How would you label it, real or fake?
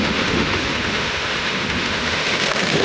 fake